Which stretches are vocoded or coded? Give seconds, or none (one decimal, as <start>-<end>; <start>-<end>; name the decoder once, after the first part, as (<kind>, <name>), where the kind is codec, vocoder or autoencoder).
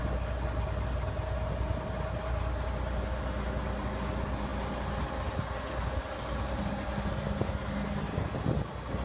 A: none